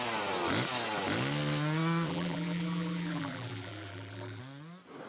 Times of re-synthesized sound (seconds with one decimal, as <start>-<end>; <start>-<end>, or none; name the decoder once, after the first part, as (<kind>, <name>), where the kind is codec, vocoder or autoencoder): 2.1-4.4 (vocoder, BigVGAN v2)